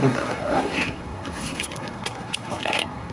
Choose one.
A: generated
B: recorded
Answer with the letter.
A